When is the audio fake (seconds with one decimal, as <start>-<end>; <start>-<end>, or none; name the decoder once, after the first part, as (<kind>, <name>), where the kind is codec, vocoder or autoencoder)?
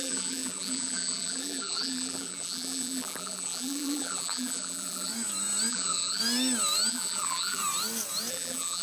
0.0-5.1 (vocoder, BigVGAN v2); 5.7-6.2; 6.9-7.6; 8.3-8.8